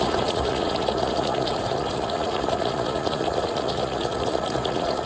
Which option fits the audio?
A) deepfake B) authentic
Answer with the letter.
A